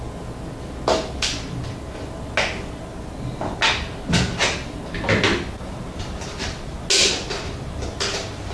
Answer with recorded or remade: recorded